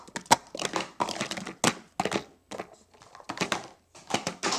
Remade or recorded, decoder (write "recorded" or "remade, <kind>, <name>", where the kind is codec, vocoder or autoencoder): recorded